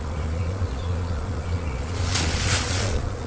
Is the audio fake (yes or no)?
yes